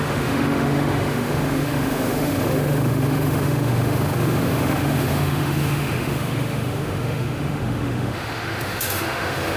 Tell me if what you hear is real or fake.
fake